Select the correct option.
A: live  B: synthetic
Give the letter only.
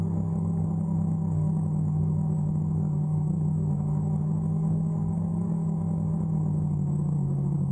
B